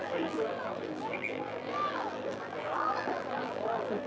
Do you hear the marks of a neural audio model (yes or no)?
yes